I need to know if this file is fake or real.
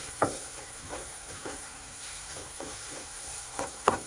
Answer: fake